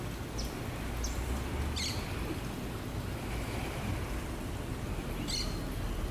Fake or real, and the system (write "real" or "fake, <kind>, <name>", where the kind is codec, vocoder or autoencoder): real